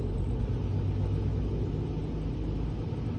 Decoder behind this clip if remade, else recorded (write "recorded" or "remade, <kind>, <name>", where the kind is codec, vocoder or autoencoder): recorded